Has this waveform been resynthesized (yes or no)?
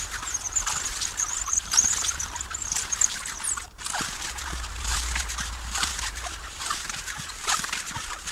yes